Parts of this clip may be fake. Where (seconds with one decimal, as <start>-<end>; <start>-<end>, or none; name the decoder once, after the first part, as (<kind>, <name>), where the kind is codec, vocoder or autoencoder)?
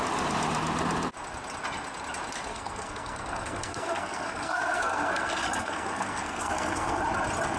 2.5-7.0 (codec, SNAC)